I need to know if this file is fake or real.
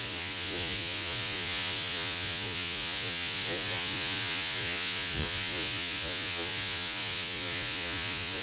fake